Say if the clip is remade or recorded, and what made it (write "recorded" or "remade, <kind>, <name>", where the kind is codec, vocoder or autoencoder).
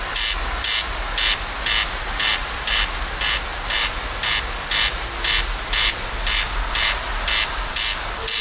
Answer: recorded